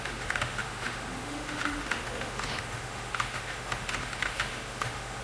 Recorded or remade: remade